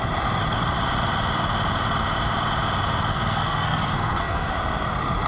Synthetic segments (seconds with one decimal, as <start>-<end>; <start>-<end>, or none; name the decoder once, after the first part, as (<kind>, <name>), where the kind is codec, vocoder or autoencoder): 3.1-4.5 (codec, SNAC)